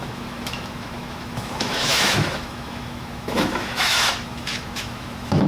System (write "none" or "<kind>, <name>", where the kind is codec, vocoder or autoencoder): autoencoder, DAC-VAE